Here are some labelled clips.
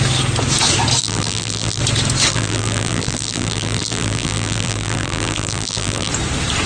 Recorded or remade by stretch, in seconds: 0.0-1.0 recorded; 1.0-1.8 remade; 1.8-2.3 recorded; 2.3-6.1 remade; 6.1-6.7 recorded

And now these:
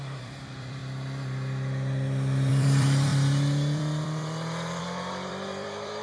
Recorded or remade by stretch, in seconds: 0.0-0.8 remade; 0.8-2.5 recorded; 2.5-6.0 remade

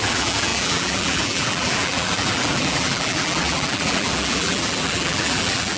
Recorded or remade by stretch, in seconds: 0.0-5.8 remade

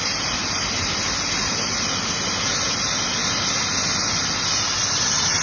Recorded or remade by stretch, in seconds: 0.0-5.4 recorded

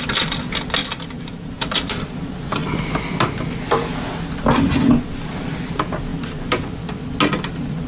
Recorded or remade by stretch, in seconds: 0.0-0.8 recorded; 0.8-1.6 remade; 1.6-6.1 recorded; 6.1-6.7 remade; 6.7-7.9 recorded

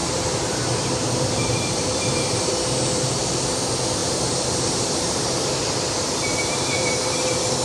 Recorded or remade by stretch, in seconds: 0.0-2.4 remade; 2.4-4.0 recorded; 4.0-5.5 remade; 5.5-6.3 recorded; 6.3-6.9 remade; 6.9-7.6 recorded

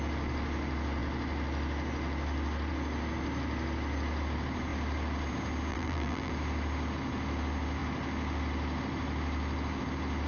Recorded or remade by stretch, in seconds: 0.0-5.7 recorded; 5.7-6.3 remade; 6.3-10.3 recorded